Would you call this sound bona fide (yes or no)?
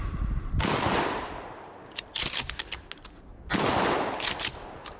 yes